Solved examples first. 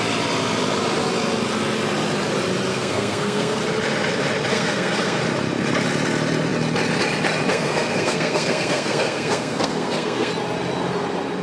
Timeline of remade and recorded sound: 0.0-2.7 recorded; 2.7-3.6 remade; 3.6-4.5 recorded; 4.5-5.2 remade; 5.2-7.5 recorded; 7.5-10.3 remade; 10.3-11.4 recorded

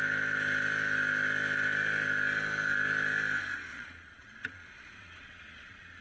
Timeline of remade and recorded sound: 0.0-3.7 recorded; 3.7-6.0 remade